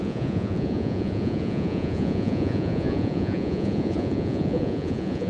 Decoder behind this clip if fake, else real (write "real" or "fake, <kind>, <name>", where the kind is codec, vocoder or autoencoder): fake, vocoder, Vocos